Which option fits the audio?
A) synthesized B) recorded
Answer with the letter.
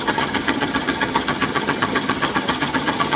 A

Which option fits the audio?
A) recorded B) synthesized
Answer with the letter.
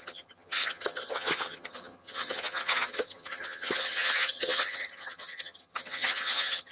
B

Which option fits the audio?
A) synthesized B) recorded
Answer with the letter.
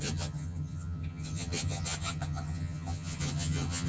A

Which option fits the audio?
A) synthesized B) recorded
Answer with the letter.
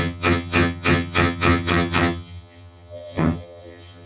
A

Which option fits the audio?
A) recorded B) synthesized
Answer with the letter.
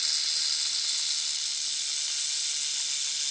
A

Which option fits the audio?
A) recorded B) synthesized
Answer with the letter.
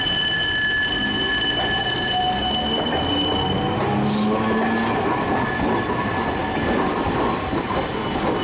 A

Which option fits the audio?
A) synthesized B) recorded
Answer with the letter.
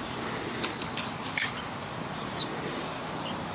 B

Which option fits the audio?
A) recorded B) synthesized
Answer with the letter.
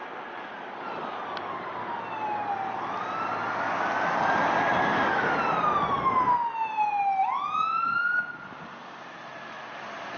A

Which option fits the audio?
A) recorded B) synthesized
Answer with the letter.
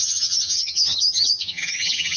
B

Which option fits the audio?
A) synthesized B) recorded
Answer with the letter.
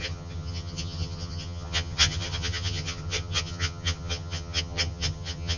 A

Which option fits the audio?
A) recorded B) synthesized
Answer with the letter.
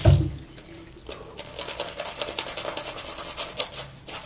A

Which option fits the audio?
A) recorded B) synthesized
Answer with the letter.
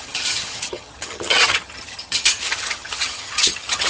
B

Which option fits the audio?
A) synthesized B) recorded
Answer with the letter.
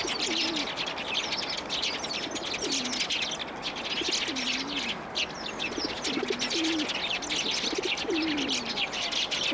B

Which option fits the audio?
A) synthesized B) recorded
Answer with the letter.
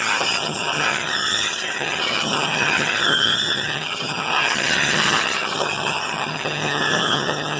A